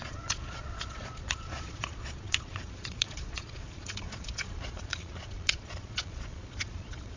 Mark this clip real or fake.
fake